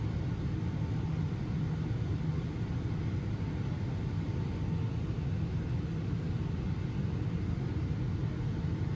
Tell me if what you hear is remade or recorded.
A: recorded